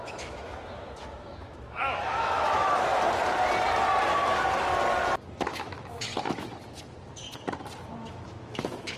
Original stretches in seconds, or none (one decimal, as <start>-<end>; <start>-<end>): 2.9-5.2; 6.1-8.0

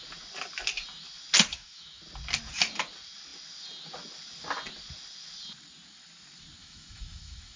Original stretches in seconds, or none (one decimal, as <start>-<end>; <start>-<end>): 0.0-1.5; 2.0-6.6